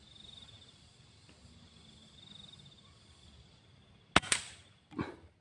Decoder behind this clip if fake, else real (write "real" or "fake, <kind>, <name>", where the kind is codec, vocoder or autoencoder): real